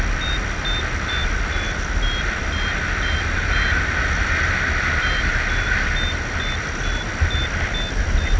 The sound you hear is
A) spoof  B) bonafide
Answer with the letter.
B